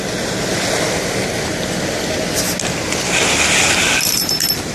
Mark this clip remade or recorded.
recorded